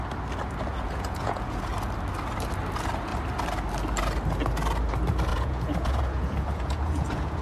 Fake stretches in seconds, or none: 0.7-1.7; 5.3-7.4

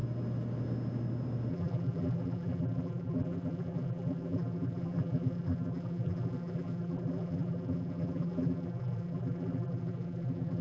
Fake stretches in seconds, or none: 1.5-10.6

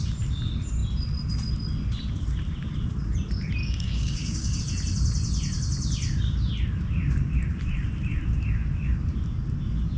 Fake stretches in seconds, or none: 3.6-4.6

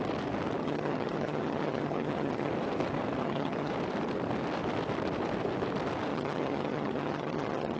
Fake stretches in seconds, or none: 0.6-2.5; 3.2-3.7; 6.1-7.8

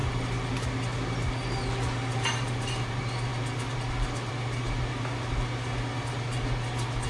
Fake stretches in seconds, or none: none

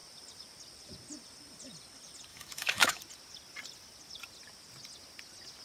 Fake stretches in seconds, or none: 2.3-3.0

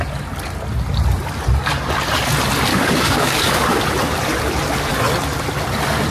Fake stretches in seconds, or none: 2.7-3.8